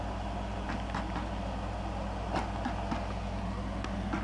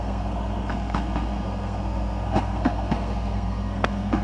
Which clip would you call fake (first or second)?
second